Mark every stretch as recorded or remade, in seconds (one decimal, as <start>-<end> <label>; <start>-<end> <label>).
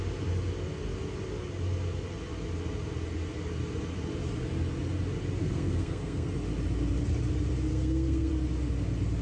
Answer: 0.0-5.4 recorded; 5.4-6.3 remade; 6.3-7.7 recorded; 7.7-8.3 remade; 8.3-9.2 recorded